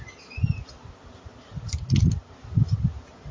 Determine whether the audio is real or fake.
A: real